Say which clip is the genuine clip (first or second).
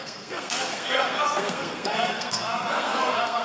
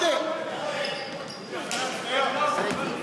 second